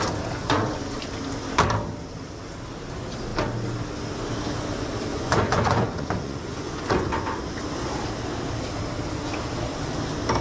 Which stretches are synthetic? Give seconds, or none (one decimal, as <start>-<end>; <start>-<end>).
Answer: 0.4-1.0; 5.1-7.4